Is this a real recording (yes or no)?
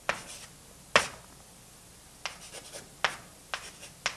yes